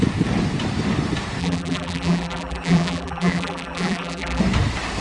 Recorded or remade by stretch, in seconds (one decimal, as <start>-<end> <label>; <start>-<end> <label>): 0.0-1.4 recorded; 1.4-4.4 remade; 4.4-5.0 recorded